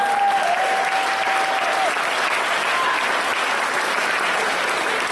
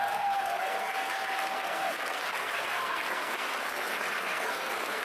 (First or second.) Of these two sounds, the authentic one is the first